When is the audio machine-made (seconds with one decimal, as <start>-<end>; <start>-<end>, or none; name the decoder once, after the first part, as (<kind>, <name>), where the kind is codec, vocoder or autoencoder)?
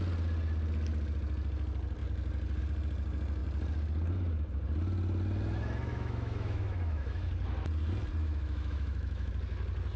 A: 5.9-7.3 (autoencoder, DAC-VAE); 8.2-9.3